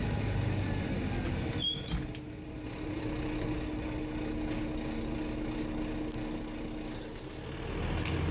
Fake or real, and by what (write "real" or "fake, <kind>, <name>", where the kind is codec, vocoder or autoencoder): real